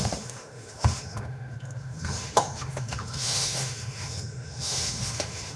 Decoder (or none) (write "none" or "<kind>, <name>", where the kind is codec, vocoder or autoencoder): autoencoder, DAC-VAE